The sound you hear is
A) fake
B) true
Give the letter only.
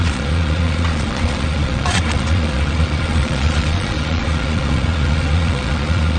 A